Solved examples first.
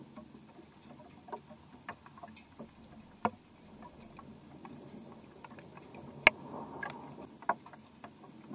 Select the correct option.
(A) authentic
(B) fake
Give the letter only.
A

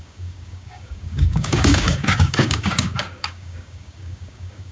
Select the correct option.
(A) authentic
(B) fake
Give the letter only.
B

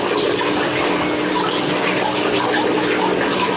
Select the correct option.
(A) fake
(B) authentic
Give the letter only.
B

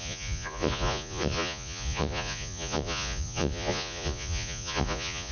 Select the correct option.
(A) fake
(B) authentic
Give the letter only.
A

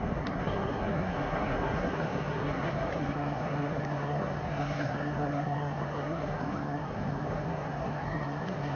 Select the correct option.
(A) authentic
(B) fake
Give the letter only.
B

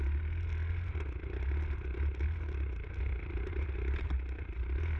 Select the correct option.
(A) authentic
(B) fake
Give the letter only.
A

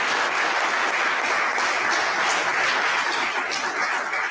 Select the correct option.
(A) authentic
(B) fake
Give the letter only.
A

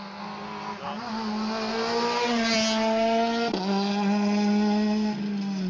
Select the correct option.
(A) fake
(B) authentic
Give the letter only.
B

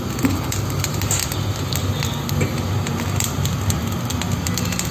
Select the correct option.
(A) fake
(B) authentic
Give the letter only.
B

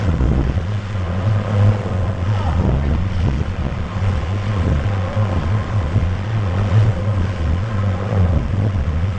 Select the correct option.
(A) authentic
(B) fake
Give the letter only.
B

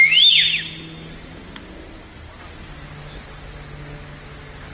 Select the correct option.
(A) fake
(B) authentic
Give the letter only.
B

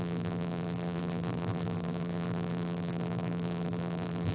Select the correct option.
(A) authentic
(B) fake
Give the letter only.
B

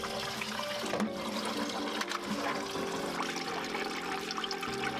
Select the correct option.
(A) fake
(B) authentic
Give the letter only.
B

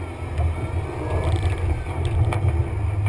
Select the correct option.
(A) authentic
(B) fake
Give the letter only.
A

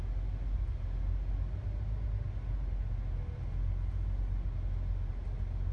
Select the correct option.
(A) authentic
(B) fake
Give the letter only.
A